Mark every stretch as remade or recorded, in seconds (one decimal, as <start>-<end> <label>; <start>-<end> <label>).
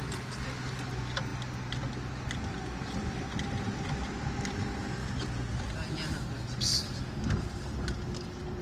0.0-8.6 recorded